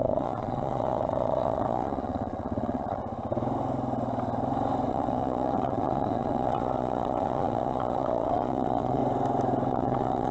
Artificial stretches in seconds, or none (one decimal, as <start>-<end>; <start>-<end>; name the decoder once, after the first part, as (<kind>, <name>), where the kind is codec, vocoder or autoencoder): 0.0-3.0 (vocoder, Vocos); 4.9-9.0; 9.7-10.3

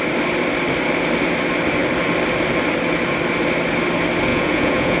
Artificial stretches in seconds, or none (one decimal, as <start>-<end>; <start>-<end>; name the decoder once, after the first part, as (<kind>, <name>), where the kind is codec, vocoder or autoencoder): 4.3-5.0 (vocoder, Vocos)

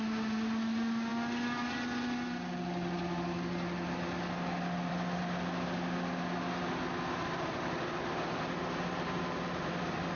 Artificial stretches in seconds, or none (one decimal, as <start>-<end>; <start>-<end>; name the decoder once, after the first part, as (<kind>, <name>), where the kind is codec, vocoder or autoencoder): none

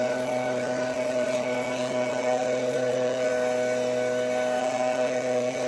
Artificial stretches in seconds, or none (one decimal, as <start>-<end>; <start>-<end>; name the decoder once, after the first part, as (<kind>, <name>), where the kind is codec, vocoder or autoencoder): 0.0-3.3 (vocoder, Vocos); 4.6-5.7

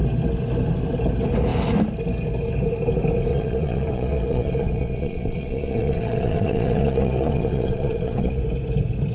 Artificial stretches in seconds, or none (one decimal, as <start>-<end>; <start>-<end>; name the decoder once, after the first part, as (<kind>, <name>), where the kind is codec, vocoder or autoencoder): 3.3-8.4 (vocoder, Vocos)

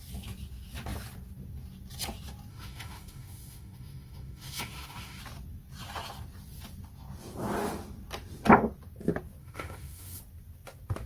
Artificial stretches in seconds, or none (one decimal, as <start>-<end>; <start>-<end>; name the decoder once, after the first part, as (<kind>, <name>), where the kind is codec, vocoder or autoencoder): 2.5-5.2 (autoencoder, DAC-VAE); 9.4-10.2

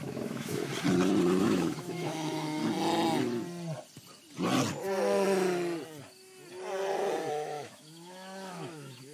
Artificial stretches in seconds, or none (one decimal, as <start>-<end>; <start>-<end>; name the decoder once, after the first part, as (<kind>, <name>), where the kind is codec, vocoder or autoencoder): 0.0-0.7 (autoencoder, DAC-VAE); 1.4-2.6; 7.3-9.1